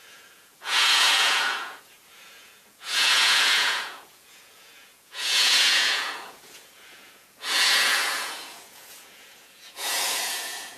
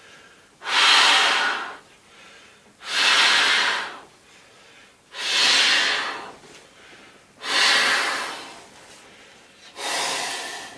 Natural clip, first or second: second